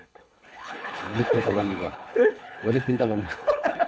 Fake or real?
fake